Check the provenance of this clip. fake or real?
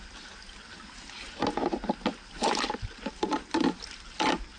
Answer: real